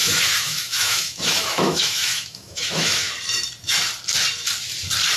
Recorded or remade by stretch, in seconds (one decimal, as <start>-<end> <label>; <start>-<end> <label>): 0.0-3.1 remade; 3.1-5.2 recorded